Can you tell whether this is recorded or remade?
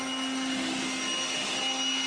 recorded